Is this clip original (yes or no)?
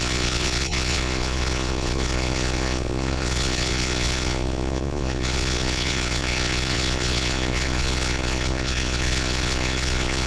no